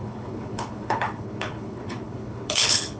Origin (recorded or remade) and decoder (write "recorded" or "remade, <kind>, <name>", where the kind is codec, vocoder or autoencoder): remade, codec, HILCodec